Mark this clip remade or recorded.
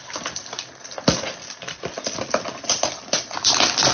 recorded